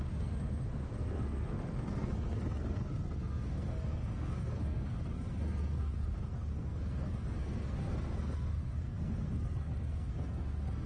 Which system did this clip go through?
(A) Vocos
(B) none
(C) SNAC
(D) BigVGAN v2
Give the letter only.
C